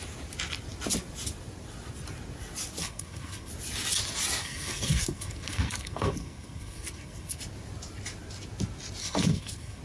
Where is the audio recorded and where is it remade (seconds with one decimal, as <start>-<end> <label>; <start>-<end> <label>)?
0.0-2.8 recorded; 2.8-3.5 remade; 3.5-4.4 recorded; 4.4-7.4 remade; 7.4-9.0 recorded; 9.0-9.8 remade

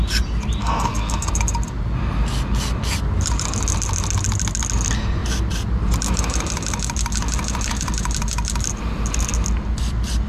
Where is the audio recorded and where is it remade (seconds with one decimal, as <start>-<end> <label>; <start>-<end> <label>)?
0.0-0.6 recorded; 0.6-1.3 remade; 1.3-10.3 recorded